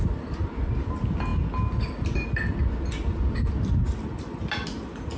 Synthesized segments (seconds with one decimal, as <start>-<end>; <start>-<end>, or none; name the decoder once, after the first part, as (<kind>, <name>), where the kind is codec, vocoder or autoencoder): none